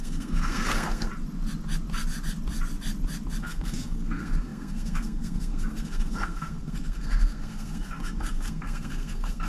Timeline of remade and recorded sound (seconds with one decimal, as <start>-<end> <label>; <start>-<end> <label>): 0.0-1.1 remade; 1.1-3.4 recorded; 3.4-9.5 remade